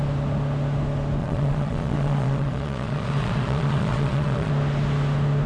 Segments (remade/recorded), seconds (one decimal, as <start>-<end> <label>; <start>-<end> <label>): 0.0-1.2 recorded; 1.2-4.5 remade; 4.5-5.5 recorded